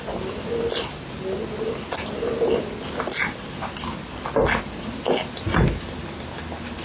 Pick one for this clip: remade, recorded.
recorded